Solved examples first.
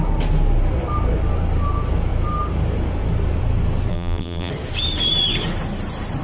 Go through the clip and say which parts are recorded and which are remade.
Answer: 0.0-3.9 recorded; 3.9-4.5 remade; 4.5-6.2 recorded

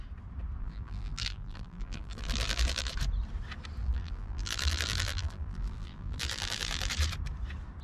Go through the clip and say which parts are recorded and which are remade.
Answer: 0.0-0.6 recorded; 0.6-2.9 remade; 2.9-3.8 recorded; 3.8-6.9 remade; 6.9-7.8 recorded

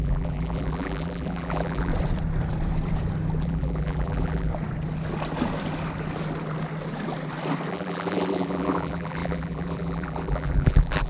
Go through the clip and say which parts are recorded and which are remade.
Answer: 0.0-1.9 remade; 1.9-3.4 recorded; 3.4-4.5 remade; 4.5-7.7 recorded; 7.7-11.1 remade

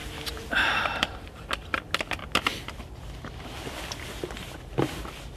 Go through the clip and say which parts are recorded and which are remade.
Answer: 0.0-1.5 remade; 1.5-5.4 recorded